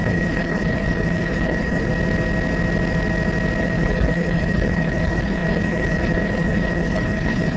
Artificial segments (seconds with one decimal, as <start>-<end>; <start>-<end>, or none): 0.0-1.9; 3.6-7.6